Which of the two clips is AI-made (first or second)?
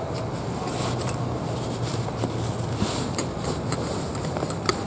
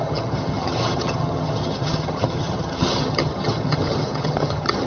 second